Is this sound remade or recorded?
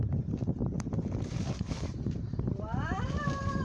remade